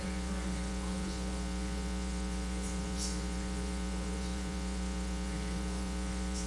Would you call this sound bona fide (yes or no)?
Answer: no